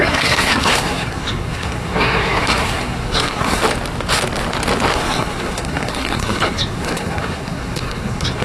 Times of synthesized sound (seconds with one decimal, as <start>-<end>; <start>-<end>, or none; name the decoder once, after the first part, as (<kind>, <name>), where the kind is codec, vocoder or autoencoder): 0.0-3.6 (codec, SNAC); 4.9-8.4